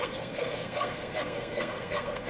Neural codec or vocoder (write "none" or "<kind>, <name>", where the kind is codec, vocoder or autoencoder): codec, SNAC